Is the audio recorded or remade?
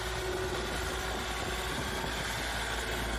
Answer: recorded